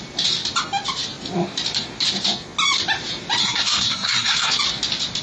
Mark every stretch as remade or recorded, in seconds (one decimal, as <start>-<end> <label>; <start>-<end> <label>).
0.0-3.4 recorded; 3.4-4.6 remade; 4.6-5.2 recorded